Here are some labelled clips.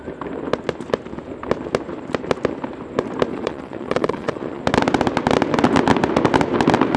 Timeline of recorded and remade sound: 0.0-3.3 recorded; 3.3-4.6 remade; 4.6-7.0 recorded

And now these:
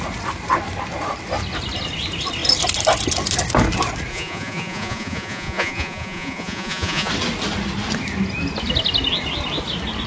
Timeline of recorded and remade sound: 0.0-4.1 recorded; 4.1-7.1 remade; 7.1-10.1 recorded

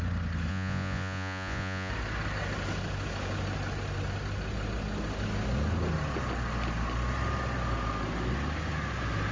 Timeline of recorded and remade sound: 0.0-0.5 recorded; 0.5-1.9 remade; 1.9-9.3 recorded

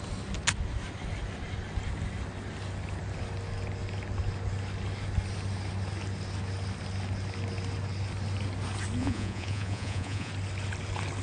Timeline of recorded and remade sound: 0.0-9.0 recorded; 9.0-10.3 remade; 10.3-11.2 recorded

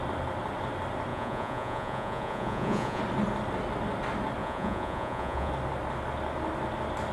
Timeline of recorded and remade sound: 0.0-1.1 recorded; 1.1-3.0 remade; 3.0-4.4 recorded; 4.4-5.5 remade; 5.5-7.1 recorded

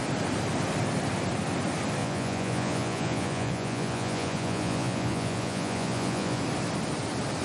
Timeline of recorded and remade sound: 0.0-2.0 recorded; 2.0-6.4 remade; 6.4-7.4 recorded

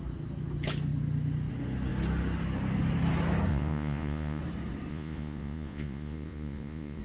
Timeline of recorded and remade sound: 0.0-3.5 recorded; 3.5-4.4 remade; 4.4-4.9 recorded; 4.9-7.0 remade